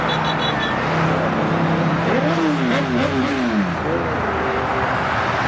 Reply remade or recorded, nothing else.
recorded